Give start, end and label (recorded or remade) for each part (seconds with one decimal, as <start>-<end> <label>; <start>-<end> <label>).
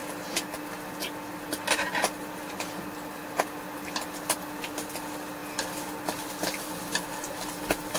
0.0-8.0 recorded